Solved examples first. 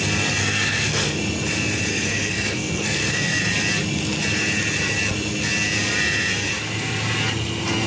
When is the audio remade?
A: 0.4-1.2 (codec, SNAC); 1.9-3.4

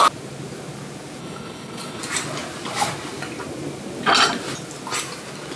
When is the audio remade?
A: 1.2-2.0 (codec, HILCodec)

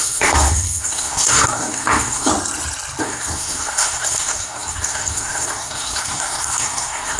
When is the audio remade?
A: 0.0-2.3 (codec, SNAC); 3.0-7.2